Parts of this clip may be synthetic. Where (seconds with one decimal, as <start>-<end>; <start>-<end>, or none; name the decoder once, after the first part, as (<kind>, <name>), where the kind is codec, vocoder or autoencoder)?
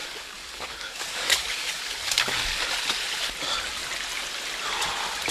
0.0-2.7 (codec, DAC)